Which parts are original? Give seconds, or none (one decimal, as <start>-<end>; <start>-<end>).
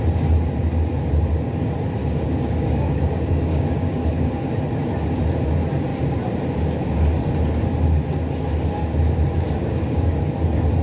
0.0-2.0; 4.5-9.6; 10.2-10.8